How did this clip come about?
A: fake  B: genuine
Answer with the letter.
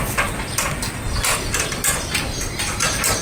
B